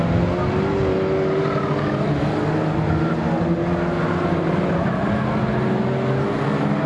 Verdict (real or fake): real